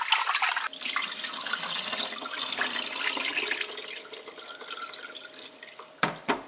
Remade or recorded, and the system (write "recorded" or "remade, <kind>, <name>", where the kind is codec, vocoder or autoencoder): recorded